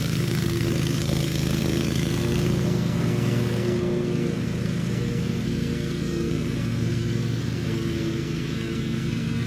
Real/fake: fake